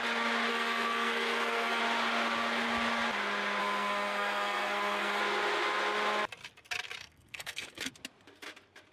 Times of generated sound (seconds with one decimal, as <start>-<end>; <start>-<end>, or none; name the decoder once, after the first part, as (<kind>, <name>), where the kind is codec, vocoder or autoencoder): 0.5-1.8 (codec, SNAC); 3.6-5.2; 7.0-7.9

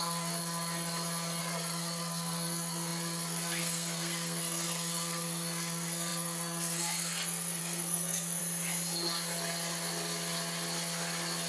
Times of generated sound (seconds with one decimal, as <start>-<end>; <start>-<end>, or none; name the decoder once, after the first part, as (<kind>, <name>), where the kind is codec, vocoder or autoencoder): 0.0-0.4 (codec, SNAC); 1.4-8.4